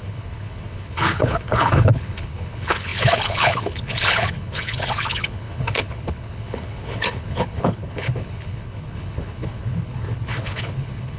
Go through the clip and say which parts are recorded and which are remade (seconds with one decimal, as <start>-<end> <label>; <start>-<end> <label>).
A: 0.0-11.2 remade

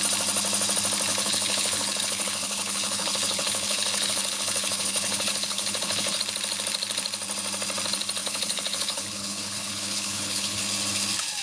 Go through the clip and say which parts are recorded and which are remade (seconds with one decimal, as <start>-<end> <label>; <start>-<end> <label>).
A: 0.0-1.1 recorded; 1.1-6.2 remade; 6.2-8.2 recorded; 8.2-10.6 remade; 10.6-11.4 recorded